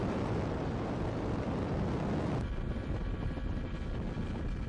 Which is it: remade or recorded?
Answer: recorded